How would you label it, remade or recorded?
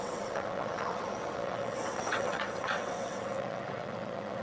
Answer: remade